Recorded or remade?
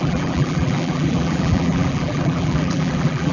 remade